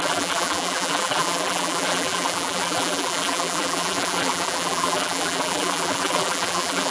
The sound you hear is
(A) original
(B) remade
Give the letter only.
B